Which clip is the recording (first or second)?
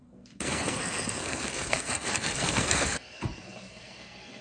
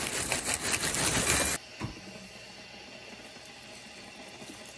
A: second